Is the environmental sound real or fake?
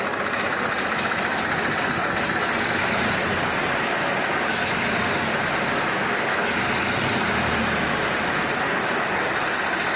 real